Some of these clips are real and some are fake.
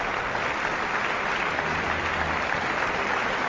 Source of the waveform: real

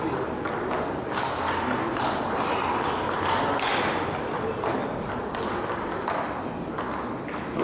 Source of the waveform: real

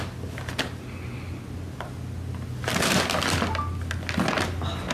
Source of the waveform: real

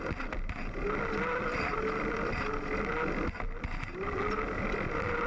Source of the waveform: real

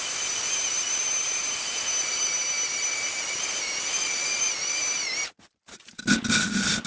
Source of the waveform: real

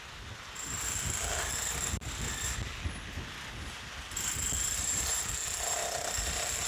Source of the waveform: real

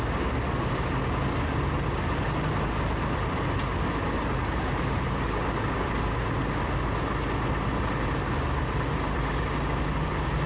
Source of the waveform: real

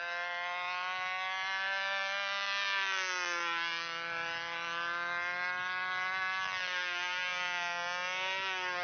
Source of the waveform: real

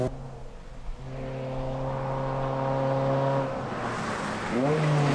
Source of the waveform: real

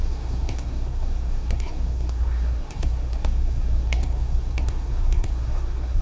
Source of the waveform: fake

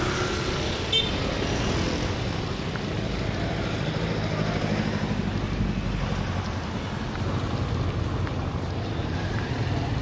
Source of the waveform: real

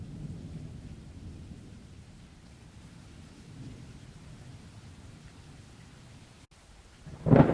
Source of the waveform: real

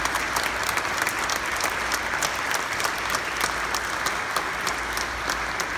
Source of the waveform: real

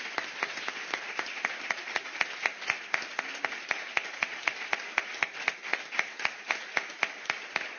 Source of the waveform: real